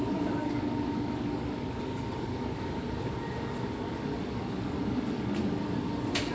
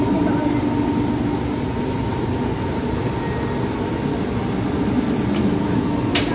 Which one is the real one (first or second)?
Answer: second